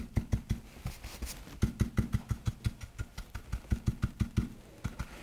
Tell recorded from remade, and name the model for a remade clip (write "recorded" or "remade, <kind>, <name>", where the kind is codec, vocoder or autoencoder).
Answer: recorded